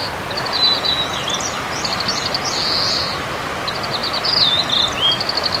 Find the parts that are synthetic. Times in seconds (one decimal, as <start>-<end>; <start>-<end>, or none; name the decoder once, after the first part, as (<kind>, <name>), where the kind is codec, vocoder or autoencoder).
none